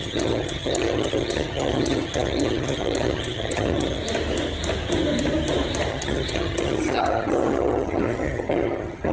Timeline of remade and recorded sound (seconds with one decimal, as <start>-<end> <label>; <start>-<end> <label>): 0.0-4.0 remade; 4.0-5.9 recorded; 5.9-9.1 remade